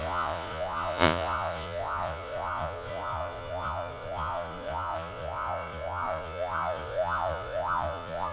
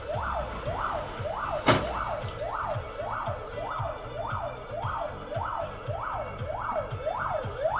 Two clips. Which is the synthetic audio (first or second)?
first